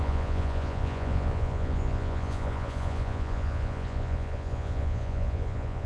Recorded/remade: remade